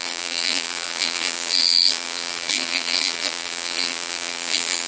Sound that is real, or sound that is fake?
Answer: fake